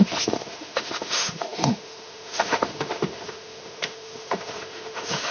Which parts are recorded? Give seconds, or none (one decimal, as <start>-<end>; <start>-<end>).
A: none